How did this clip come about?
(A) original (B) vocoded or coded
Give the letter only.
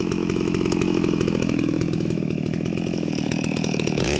B